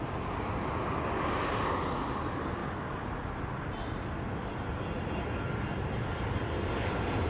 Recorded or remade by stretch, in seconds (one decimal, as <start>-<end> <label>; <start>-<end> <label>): 0.0-7.3 recorded